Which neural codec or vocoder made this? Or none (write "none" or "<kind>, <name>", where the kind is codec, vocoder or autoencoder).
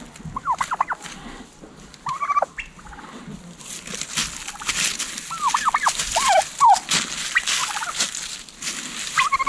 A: none